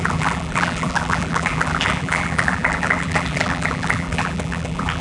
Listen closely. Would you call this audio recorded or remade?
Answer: remade